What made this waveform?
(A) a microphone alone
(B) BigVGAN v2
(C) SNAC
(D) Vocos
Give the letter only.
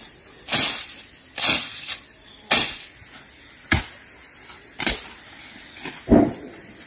A